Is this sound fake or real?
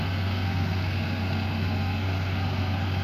fake